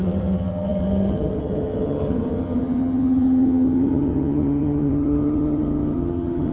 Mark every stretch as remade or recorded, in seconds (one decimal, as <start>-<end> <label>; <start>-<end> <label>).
0.0-6.5 remade